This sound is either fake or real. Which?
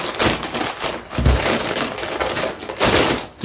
real